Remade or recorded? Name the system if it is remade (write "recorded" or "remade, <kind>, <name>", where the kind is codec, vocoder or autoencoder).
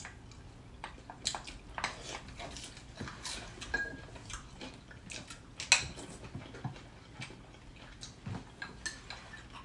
recorded